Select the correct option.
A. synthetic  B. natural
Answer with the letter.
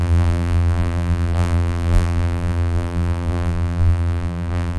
A